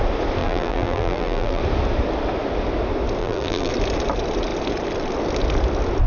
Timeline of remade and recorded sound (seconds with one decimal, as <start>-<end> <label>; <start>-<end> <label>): 0.0-0.4 recorded; 0.4-1.6 remade; 1.6-3.2 recorded; 3.2-3.7 remade; 3.7-6.1 recorded